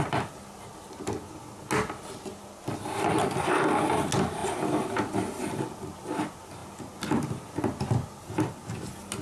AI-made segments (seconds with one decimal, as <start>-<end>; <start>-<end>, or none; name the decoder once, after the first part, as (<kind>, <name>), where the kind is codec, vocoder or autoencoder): none